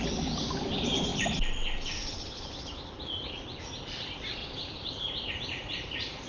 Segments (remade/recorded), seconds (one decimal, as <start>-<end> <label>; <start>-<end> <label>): 0.0-4.4 recorded; 4.4-6.3 remade